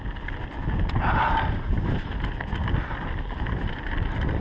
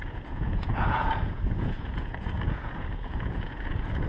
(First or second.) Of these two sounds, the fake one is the second